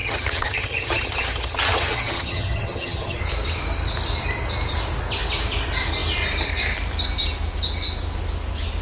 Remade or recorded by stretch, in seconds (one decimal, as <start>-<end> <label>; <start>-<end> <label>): 0.0-3.2 remade; 3.2-8.8 recorded